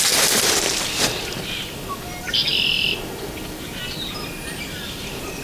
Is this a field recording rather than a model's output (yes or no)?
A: yes